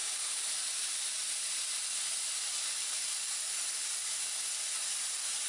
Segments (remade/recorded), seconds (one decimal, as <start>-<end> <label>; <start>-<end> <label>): 0.0-3.3 remade; 3.3-5.5 recorded